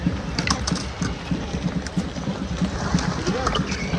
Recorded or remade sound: remade